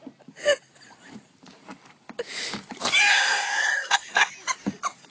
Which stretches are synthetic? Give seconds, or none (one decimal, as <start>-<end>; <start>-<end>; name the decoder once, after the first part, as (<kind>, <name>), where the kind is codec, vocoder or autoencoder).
3.1-4.3 (codec, SNAC)